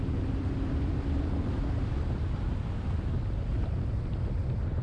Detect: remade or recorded recorded